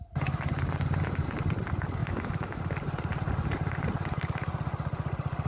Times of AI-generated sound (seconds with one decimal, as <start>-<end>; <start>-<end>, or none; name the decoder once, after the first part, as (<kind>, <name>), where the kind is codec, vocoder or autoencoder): 2.0-2.6 (autoencoder, DAC-VAE)